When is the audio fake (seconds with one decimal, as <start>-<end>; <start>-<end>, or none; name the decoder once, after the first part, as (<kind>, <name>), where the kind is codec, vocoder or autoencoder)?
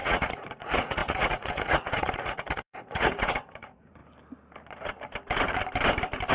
0.0-4.0 (vocoder, Vocos)